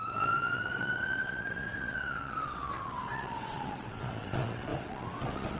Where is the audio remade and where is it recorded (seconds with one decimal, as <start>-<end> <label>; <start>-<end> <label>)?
0.0-5.6 remade